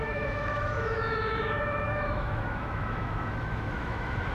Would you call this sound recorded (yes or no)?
no